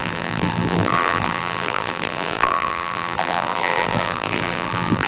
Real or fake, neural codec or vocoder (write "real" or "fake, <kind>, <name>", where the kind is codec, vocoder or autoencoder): fake, vocoder, BigVGAN v2